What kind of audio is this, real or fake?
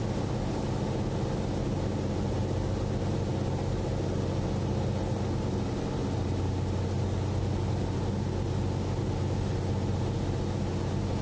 real